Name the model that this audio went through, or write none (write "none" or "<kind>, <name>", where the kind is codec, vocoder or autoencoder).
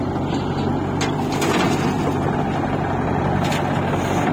none